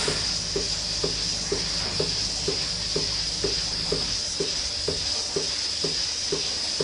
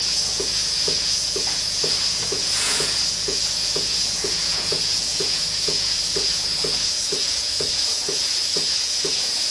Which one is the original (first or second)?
first